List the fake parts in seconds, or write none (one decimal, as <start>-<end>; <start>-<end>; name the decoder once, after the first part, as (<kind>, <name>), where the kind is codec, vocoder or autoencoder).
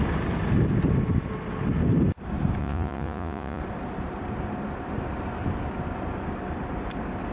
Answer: 2.6-3.6 (vocoder, Vocos)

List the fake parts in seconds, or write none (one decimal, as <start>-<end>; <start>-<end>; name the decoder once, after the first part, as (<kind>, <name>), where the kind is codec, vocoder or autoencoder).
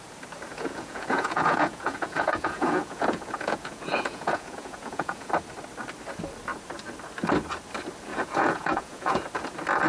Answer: 0.5-5.3 (vocoder, Vocos); 8.1-9.2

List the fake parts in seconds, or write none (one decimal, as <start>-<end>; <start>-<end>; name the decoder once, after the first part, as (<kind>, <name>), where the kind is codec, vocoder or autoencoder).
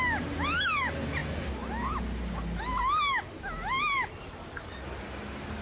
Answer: none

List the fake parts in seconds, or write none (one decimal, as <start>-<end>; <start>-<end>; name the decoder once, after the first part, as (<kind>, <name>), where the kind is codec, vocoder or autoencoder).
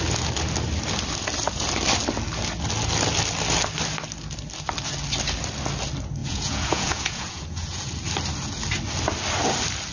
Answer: 6.2-7.9 (vocoder, Vocos)